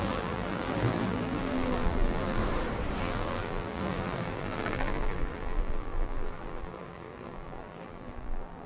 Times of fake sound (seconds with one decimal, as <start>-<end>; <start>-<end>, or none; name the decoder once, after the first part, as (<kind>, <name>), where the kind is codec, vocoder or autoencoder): 0.0-2.4 (vocoder, BigVGAN v2); 3.0-8.7